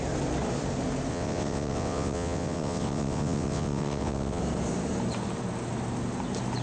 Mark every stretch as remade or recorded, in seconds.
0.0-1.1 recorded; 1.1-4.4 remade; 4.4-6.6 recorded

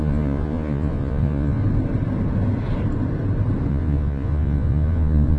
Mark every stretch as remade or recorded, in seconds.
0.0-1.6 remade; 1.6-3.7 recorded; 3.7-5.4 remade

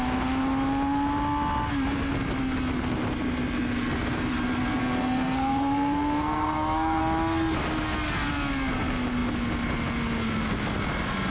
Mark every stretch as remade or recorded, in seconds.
0.0-4.8 recorded; 4.8-7.0 remade; 7.0-11.3 recorded

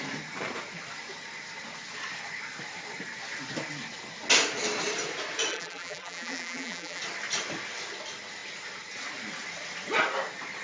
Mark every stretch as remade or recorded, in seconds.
0.0-5.5 recorded; 5.5-7.0 remade; 7.0-10.6 recorded

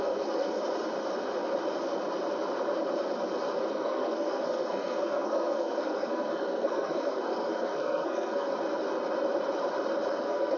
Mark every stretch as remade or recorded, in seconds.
0.0-0.6 remade; 0.6-3.7 recorded; 3.7-8.5 remade; 8.5-10.1 recorded; 10.1-10.6 remade

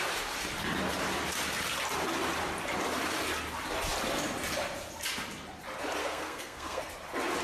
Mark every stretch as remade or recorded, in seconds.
0.0-6.0 recorded; 6.0-6.9 remade; 6.9-7.4 recorded

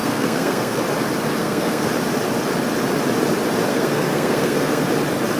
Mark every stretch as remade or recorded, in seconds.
0.0-0.8 remade; 0.8-1.4 recorded; 1.4-1.9 remade; 1.9-3.7 recorded; 3.7-4.8 remade; 4.8-5.4 recorded